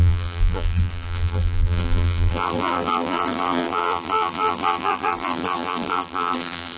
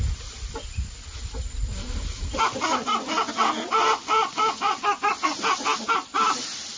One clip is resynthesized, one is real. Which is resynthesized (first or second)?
first